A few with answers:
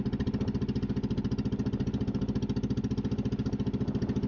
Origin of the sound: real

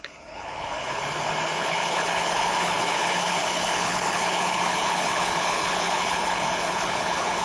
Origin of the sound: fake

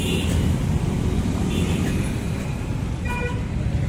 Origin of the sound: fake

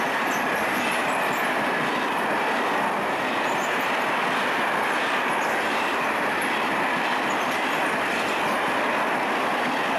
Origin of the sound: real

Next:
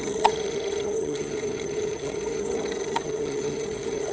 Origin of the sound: fake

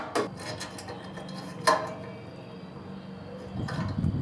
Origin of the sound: real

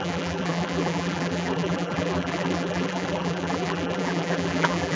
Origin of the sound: fake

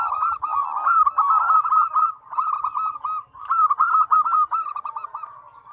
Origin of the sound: real